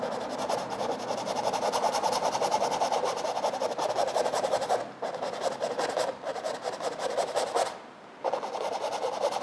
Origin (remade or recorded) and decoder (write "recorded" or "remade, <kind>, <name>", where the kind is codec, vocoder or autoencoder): recorded